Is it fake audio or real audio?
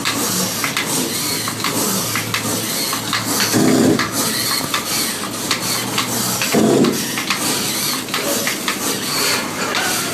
real